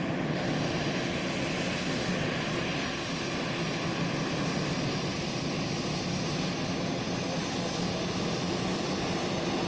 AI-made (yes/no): no